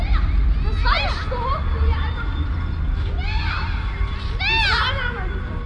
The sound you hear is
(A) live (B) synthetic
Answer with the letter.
A